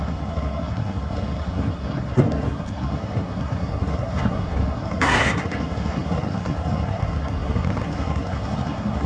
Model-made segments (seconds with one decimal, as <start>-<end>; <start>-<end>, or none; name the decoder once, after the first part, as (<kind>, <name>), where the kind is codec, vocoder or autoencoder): 0.0-9.1 (codec, SNAC)